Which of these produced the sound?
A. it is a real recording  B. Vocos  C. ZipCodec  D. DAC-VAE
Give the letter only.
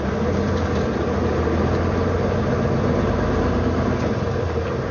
A